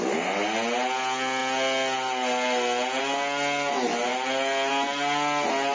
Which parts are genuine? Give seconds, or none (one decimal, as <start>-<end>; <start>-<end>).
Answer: 0.0-5.7